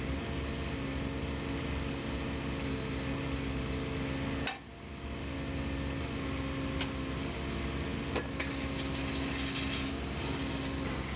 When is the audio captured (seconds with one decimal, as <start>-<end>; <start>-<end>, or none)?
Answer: 0.0-11.2